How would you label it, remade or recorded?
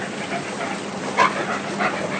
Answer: recorded